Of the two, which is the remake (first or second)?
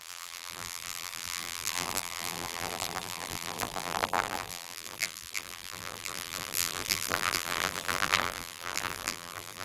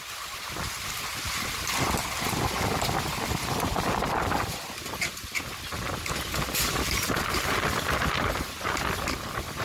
first